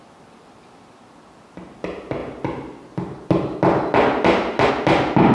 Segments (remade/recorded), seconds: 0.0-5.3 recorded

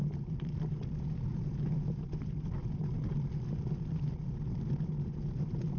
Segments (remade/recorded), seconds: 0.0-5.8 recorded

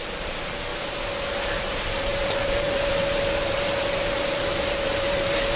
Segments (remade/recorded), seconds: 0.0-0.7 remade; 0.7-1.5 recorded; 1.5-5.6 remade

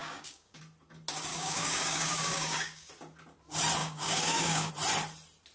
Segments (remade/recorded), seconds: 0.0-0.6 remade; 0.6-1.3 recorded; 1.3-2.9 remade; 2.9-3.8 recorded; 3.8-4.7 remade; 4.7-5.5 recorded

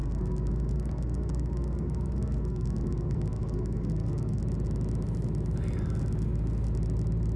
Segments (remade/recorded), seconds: 0.0-4.4 remade; 4.4-7.4 recorded